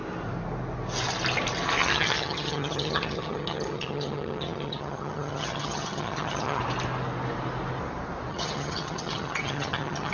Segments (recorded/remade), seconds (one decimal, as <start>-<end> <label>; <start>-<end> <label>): 0.0-1.8 recorded; 1.8-6.6 remade; 6.6-8.3 recorded; 8.3-10.1 remade